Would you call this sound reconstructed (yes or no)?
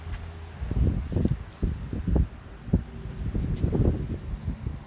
no